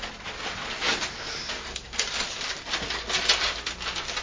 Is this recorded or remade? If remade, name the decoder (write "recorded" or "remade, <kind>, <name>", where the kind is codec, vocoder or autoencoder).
recorded